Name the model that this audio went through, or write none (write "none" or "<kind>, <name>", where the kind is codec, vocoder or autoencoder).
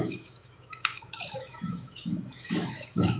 autoencoder, DAC-VAE